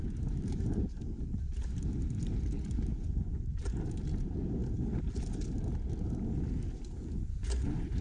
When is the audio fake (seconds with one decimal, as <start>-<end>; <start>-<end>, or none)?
2.9-3.4; 7.0-8.0